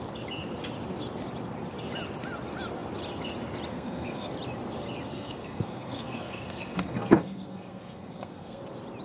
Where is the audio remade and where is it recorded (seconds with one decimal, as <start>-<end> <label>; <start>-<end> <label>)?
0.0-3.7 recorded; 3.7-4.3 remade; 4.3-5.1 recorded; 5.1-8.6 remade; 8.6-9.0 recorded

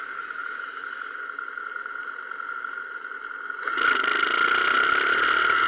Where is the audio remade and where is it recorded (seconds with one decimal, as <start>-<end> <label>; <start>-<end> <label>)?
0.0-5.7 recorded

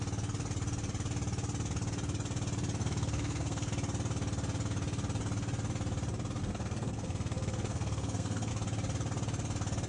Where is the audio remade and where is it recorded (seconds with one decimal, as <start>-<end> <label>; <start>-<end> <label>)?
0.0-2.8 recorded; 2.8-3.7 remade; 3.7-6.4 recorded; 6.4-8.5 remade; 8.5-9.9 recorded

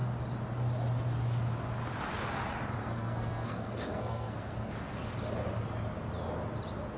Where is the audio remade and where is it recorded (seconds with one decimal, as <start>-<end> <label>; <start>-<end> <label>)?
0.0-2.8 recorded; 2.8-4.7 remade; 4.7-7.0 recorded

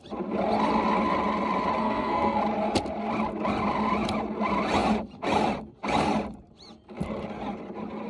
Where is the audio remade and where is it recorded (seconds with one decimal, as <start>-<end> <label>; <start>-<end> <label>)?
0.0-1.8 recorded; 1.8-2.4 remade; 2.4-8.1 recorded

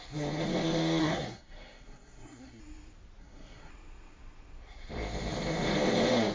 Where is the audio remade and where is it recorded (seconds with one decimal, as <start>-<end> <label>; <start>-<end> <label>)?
0.0-1.0 recorded; 1.0-2.6 remade; 2.6-3.2 recorded; 3.2-3.7 remade; 3.7-6.3 recorded

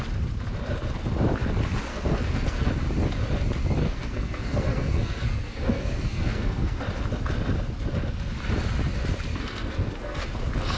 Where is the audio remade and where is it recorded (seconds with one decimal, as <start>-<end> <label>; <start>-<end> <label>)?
0.0-1.9 recorded; 1.9-2.7 remade; 2.7-3.8 recorded; 3.8-6.8 remade; 6.8-9.3 recorded; 9.3-10.3 remade; 10.3-10.8 recorded